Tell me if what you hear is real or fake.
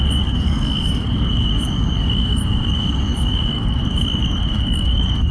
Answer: fake